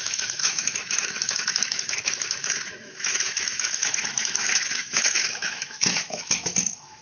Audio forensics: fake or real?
fake